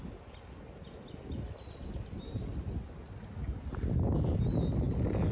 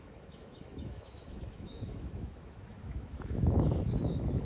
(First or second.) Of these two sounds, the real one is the first